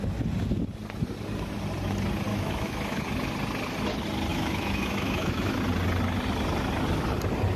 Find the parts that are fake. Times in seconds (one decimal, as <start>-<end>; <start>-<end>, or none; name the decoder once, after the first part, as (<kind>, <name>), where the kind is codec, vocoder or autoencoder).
2.3-3.0 (autoencoder, DAC-VAE); 4.3-5.6